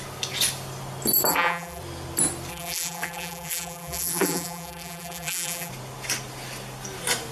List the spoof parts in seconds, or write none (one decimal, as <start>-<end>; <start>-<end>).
1.3-1.8; 2.5-5.7

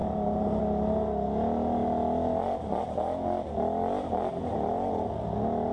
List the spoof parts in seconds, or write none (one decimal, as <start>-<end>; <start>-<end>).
0.0-0.6

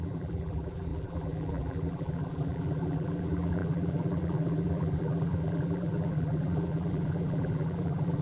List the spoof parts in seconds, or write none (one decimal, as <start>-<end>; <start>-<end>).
0.0-8.2